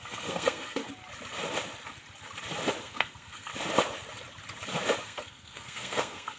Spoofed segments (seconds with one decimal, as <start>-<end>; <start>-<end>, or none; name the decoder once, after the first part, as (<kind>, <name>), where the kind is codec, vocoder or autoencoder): 0.0-0.8 (codec, SNAC); 2.8-3.5; 5.0-6.4